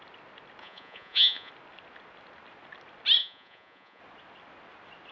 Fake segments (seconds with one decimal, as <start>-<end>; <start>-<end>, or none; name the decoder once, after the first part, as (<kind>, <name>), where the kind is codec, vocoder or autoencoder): 0.6-1.5 (vocoder, Vocos); 3.2-4.0